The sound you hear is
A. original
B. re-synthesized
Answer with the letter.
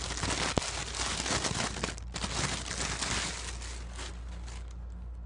A